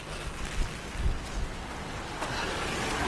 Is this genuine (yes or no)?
yes